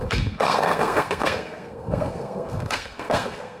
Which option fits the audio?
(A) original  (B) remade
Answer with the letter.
B